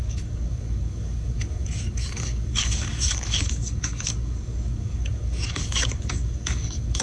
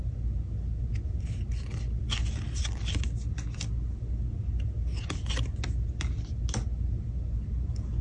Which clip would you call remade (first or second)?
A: first